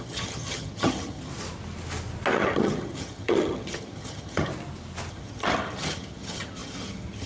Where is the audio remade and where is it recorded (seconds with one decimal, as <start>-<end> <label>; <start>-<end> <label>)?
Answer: 0.0-1.3 remade; 1.3-2.3 recorded; 2.3-4.5 remade; 4.5-5.1 recorded; 5.1-7.3 remade